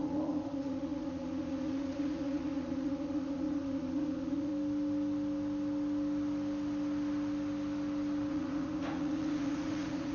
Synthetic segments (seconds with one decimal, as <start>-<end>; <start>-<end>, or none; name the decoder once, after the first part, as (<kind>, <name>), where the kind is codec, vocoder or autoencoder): 0.0-4.5 (vocoder, Vocos); 8.3-10.1